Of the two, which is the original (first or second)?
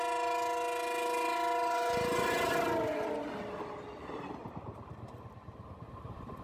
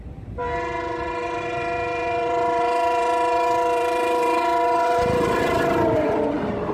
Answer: first